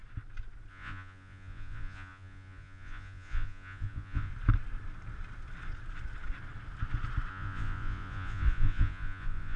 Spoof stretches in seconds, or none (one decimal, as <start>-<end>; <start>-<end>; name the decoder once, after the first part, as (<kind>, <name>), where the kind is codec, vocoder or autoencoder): 0.7-4.3 (vocoder, Vocos); 7.3-9.6